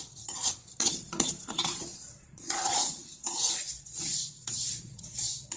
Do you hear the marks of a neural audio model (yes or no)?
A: yes